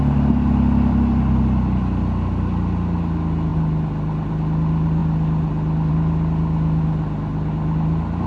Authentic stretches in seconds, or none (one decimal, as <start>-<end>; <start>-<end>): 0.0-8.3